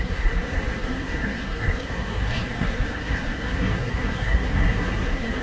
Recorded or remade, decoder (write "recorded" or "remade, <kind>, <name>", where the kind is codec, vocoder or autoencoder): remade, codec, SNAC